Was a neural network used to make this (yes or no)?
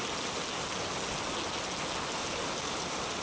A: no